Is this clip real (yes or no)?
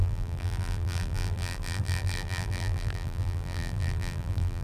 no